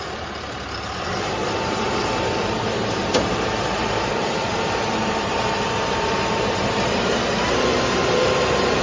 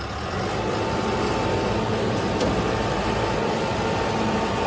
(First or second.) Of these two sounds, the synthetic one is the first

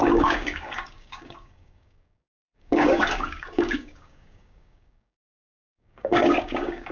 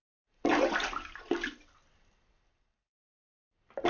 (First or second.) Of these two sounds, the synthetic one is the first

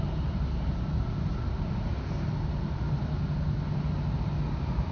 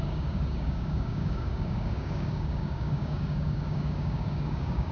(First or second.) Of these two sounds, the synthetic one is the second